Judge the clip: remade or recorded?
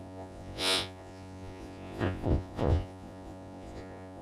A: remade